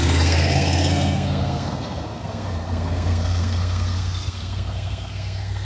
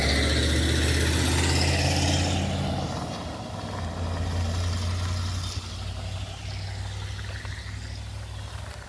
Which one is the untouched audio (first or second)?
second